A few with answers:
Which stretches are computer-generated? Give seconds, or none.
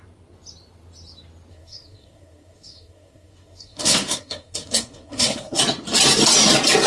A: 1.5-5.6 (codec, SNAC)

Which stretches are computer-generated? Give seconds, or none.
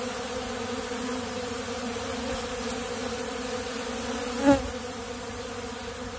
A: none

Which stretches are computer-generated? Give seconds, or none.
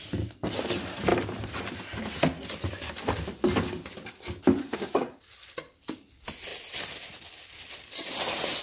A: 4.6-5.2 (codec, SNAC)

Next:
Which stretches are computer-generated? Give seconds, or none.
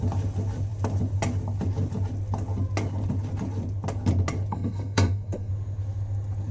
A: 4.5-5.5 (codec, SNAC)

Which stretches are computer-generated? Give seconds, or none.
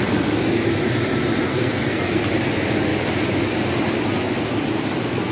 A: 1.5-2.2 (codec, SNAC)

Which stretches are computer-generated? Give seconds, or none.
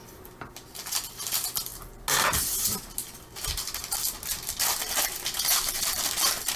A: none